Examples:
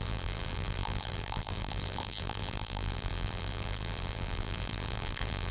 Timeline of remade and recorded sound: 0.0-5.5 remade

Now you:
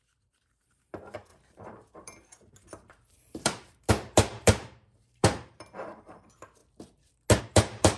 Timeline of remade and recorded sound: 0.0-6.6 remade; 6.6-7.4 recorded; 7.4-8.0 remade

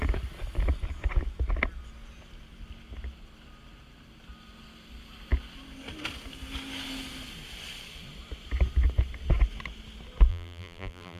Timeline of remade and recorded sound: 0.0-10.3 recorded; 10.3-11.2 remade

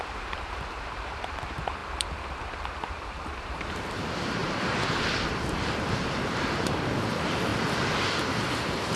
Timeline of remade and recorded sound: 0.0-4.4 remade; 4.4-5.8 recorded; 5.8-7.5 remade; 7.5-8.4 recorded; 8.4-9.0 remade